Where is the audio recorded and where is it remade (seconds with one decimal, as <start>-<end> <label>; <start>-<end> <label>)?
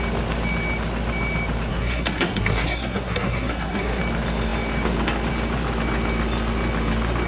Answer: 0.0-1.7 recorded; 1.7-4.0 remade; 4.0-7.3 recorded